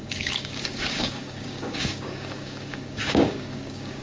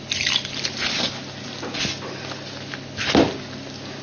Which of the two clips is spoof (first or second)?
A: first